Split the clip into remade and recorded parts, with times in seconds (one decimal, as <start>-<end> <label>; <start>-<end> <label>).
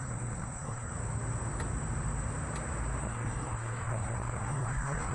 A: 0.0-0.9 remade; 0.9-3.0 recorded; 3.0-5.1 remade